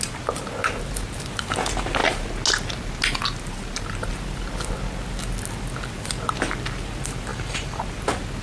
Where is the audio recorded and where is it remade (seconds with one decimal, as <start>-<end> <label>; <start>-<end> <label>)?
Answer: 0.0-7.3 recorded; 7.3-7.8 remade; 7.8-8.4 recorded